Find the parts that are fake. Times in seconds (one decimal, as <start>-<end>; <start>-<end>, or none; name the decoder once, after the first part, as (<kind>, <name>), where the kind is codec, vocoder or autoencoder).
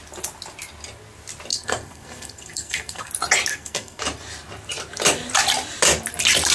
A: 1.5-3.1 (codec, SNAC); 3.5-4.0